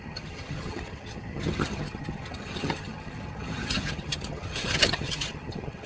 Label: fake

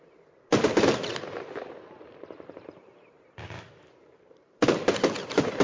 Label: fake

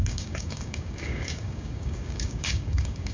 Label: fake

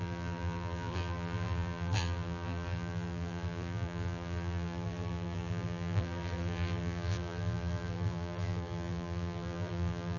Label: fake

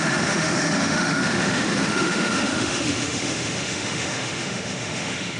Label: fake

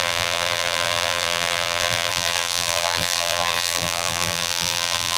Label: fake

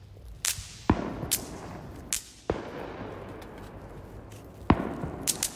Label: real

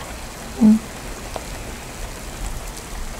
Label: real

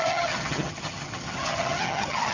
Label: fake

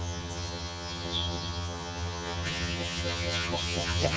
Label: fake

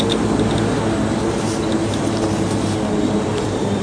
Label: real